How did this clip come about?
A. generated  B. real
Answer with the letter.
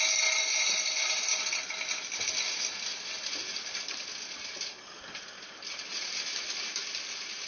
B